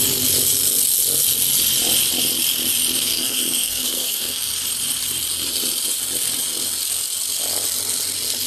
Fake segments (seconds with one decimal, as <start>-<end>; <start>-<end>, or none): 3.0-4.5